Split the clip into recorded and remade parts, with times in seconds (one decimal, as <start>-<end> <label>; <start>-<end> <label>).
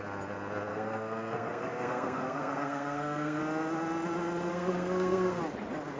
0.0-0.7 recorded; 0.7-3.4 remade; 3.4-4.5 recorded; 4.5-5.4 remade; 5.4-6.0 recorded